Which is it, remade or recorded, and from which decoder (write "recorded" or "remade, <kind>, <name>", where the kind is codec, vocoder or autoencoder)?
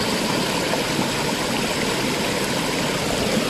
recorded